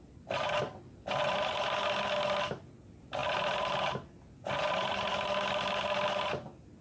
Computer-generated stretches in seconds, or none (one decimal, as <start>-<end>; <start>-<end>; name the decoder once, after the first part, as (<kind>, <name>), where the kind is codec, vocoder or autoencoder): none